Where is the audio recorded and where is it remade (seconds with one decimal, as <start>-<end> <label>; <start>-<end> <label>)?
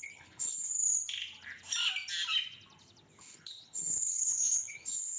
0.0-0.7 remade; 0.7-3.2 recorded; 3.2-5.2 remade